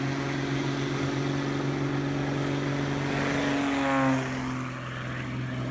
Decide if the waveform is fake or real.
real